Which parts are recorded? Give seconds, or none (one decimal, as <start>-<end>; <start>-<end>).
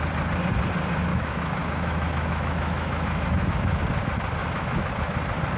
0.0-1.1; 3.8-4.4; 4.9-5.6